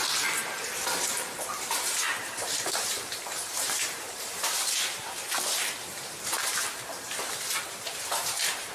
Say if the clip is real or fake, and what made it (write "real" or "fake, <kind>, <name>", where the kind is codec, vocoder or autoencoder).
fake, vocoder, BigVGAN v2